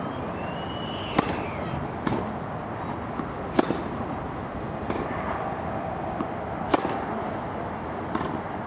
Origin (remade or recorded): recorded